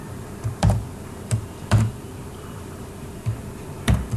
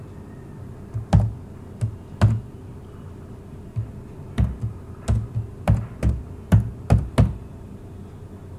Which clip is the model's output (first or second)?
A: first